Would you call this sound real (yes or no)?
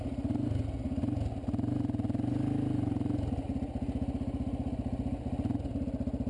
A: yes